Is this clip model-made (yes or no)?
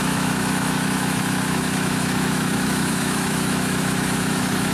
yes